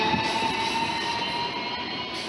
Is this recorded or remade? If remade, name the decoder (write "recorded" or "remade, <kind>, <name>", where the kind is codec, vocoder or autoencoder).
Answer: recorded